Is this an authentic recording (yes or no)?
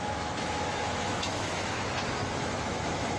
no